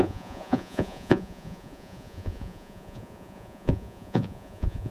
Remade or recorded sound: remade